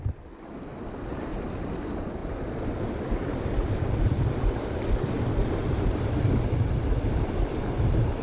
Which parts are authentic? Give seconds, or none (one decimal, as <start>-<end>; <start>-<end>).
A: 0.0-1.3; 1.8-2.2; 7.1-8.2